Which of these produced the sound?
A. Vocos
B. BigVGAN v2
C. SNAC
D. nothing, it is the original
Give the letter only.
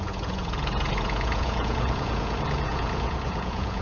A